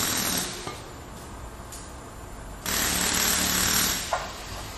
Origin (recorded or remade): recorded